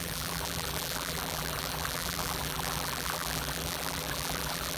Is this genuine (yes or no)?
no